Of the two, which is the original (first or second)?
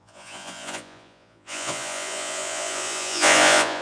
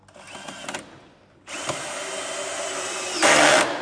second